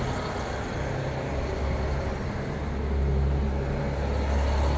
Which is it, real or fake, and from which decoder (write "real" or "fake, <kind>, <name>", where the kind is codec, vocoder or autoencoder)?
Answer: real